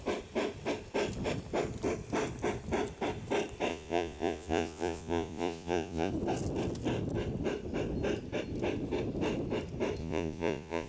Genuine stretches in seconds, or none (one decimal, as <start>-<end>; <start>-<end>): 0.0-3.7; 6.1-10.0